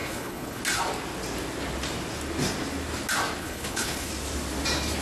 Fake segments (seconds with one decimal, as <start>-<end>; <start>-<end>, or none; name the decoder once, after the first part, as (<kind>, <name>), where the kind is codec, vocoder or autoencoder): 0.0-0.6 (codec, HILCodec); 3.4-4.1